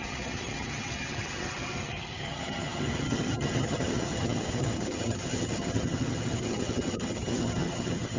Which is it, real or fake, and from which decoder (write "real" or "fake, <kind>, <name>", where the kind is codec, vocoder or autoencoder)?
fake, vocoder, HiFi-GAN